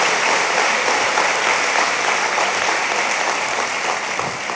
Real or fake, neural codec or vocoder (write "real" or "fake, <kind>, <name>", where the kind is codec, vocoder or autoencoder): real